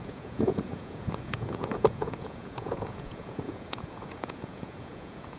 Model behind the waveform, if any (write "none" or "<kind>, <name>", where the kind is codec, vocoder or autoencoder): vocoder, Vocos